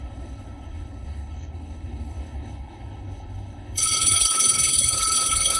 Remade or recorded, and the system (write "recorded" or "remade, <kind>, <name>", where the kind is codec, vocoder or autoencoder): remade, codec, HILCodec